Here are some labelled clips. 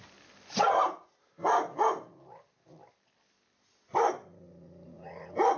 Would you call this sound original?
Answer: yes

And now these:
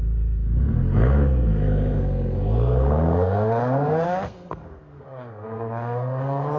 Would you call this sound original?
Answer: no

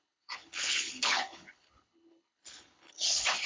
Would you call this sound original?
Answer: no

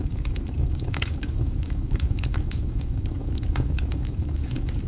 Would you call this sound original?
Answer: no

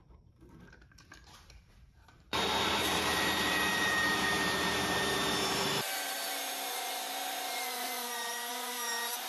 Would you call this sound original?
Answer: no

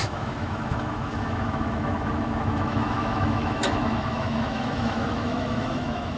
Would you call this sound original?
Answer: no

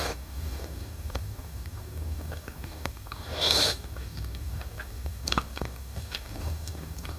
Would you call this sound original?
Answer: no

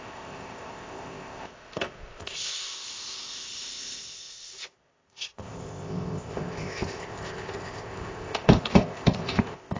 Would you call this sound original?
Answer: no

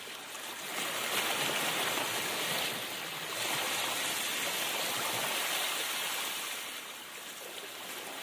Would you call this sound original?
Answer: yes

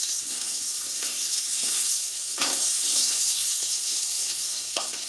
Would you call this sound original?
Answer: no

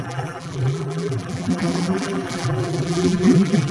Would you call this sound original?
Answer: no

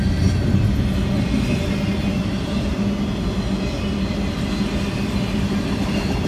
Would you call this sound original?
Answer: yes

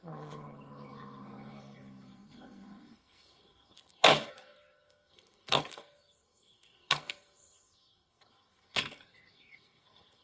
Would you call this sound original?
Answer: no